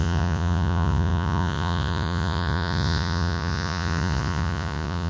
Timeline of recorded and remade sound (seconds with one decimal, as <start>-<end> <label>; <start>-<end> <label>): 0.0-5.1 remade